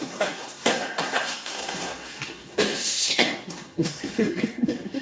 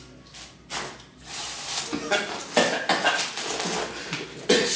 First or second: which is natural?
second